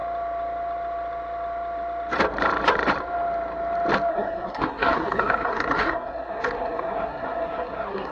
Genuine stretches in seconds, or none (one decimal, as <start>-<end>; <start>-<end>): 0.0-4.1